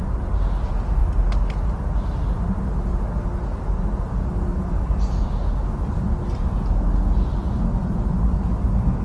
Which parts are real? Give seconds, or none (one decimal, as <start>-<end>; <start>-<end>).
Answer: 0.0-4.5; 5.3-9.0